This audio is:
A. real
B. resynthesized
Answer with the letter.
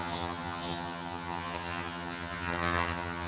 B